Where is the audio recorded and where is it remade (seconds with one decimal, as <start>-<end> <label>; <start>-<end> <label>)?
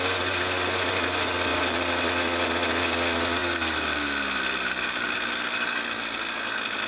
0.0-1.5 recorded; 1.5-2.0 remade; 2.0-6.9 recorded